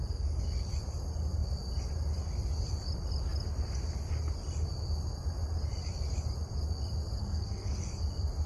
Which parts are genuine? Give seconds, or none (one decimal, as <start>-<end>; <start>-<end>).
0.0-7.2; 7.8-8.5

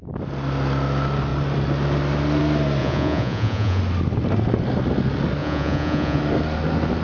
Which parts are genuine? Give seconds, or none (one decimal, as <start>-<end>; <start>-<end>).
0.0-2.8; 3.8-5.4; 6.2-7.0

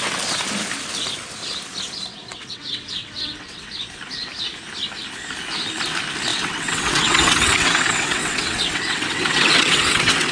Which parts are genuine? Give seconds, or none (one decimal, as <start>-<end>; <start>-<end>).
0.0-2.2; 3.7-6.3

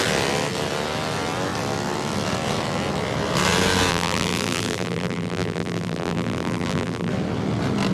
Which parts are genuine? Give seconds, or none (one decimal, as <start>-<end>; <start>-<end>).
0.0-3.9; 7.1-7.9

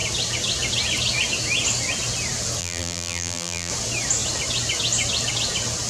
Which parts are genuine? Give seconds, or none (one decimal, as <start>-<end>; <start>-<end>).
0.0-2.6; 3.7-5.9

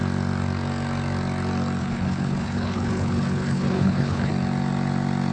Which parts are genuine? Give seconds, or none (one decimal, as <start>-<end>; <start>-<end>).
0.0-1.8; 4.3-5.3